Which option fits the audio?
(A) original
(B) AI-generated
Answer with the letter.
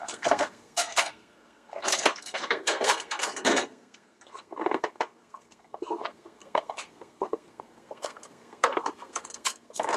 B